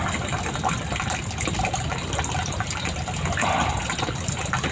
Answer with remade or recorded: remade